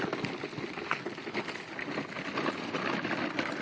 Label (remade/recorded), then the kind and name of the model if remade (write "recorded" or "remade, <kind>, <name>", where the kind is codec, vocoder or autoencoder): recorded